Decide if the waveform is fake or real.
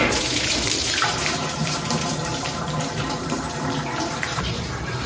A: fake